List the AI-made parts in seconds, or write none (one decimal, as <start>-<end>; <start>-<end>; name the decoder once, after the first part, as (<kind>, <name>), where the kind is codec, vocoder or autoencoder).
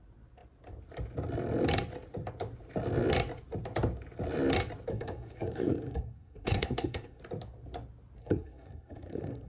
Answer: 4.9-7.2 (codec, SNAC); 8.2-9.5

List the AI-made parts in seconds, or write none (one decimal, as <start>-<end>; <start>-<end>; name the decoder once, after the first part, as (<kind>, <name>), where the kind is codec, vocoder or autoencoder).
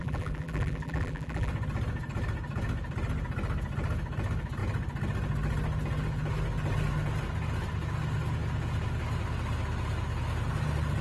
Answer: 0.0-1.5 (vocoder, BigVGAN v2)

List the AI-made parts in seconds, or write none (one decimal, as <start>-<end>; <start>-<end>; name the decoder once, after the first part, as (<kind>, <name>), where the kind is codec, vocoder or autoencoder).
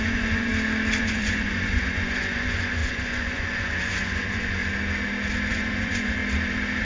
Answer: 0.0-0.5 (vocoder, Vocos); 1.0-4.6; 5.5-6.2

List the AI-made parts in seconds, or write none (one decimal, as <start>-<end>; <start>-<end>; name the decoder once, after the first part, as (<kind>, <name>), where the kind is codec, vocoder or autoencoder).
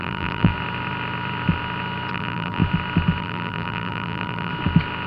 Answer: 0.0-0.5 (vocoder, BigVGAN v2); 2.1-2.6; 3.2-4.5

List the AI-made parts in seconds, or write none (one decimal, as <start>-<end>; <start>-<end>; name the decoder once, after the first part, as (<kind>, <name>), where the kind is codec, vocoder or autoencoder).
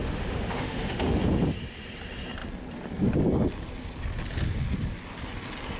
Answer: 0.0-1.2 (autoencoder, DAC-VAE)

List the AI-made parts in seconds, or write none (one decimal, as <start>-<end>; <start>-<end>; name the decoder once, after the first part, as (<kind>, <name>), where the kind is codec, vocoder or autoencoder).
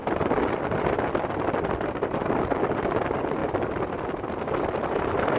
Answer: none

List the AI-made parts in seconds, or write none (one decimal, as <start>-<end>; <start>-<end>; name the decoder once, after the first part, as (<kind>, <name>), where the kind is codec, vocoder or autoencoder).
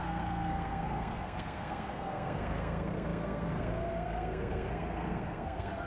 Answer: 0.0-5.9 (codec, SNAC)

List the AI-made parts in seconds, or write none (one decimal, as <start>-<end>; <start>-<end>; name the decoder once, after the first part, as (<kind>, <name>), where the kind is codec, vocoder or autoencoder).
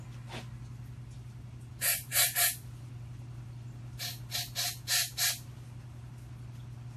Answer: none